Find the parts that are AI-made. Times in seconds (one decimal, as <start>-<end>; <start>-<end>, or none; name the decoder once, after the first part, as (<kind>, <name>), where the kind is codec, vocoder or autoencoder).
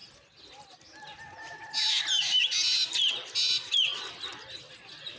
none